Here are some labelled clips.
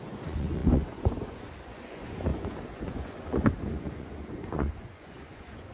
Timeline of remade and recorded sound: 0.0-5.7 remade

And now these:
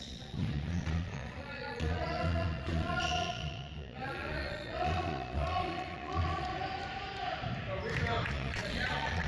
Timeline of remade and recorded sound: 0.0-6.5 remade; 6.5-8.3 recorded; 8.3-9.3 remade

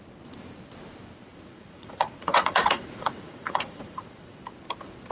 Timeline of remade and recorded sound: 0.0-1.3 recorded; 1.3-4.4 remade; 4.4-5.1 recorded

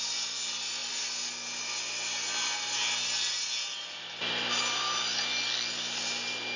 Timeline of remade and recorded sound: 0.0-6.6 recorded

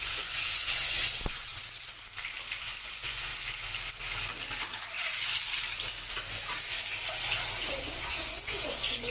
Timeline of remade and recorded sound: 0.0-1.5 remade; 1.5-2.6 recorded; 2.6-3.3 remade; 3.3-7.7 recorded; 7.7-9.1 remade

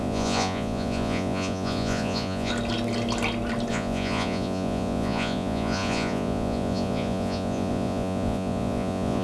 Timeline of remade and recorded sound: 0.0-2.5 remade; 2.5-3.7 recorded; 3.7-9.2 remade

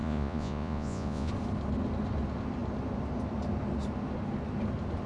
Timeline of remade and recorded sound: 0.0-1.3 remade; 1.3-5.1 recorded